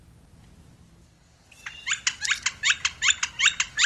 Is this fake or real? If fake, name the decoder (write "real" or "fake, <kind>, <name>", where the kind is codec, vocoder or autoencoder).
real